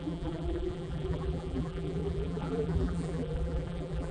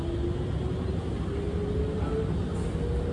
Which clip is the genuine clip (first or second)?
second